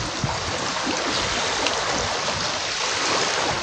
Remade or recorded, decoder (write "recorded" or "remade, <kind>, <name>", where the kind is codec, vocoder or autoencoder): recorded